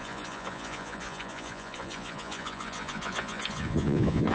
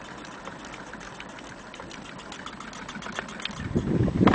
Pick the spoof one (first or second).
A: first